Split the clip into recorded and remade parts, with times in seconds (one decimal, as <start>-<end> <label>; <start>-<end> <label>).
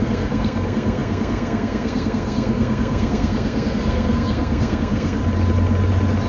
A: 0.0-5.2 remade; 5.2-6.3 recorded